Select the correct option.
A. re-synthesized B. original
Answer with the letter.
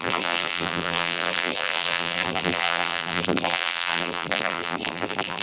A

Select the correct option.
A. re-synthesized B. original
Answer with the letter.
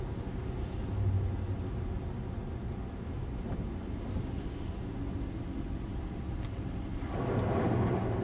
B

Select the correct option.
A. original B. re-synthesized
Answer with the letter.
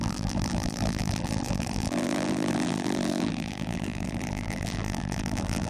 B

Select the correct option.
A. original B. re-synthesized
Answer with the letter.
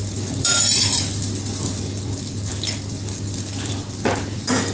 B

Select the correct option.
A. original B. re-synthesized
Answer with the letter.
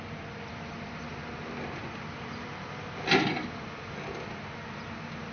A